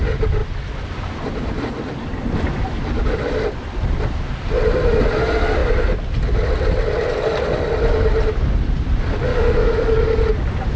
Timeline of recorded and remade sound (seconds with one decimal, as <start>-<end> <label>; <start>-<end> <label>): 0.0-9.3 recorded; 9.3-10.2 remade; 10.2-10.8 recorded